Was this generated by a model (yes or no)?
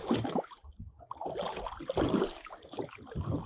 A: no